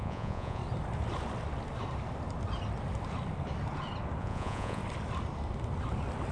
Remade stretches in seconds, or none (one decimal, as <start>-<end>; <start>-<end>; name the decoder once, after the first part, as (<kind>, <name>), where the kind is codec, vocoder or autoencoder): 0.0-0.6 (vocoder, Vocos); 4.2-4.8